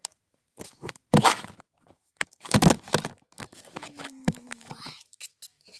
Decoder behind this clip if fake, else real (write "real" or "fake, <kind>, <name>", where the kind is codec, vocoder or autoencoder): fake, autoencoder, DAC-VAE